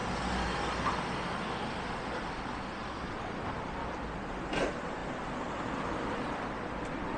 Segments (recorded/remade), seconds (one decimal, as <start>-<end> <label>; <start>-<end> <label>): 0.0-7.2 recorded